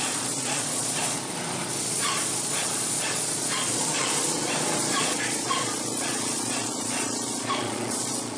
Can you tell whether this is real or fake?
fake